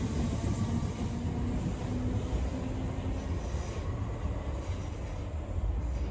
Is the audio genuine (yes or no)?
yes